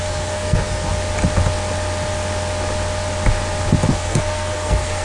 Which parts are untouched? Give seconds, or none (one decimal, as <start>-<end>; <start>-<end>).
0.9-3.9